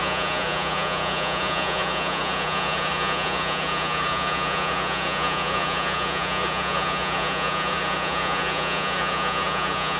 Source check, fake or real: fake